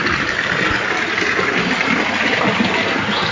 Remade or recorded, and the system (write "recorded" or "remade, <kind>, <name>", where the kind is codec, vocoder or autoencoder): recorded